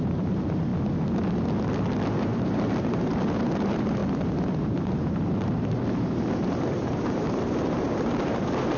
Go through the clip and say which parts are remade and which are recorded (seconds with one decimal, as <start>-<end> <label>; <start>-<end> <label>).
0.0-0.7 remade; 0.7-2.2 recorded; 2.2-4.0 remade; 4.0-4.5 recorded; 4.5-8.8 remade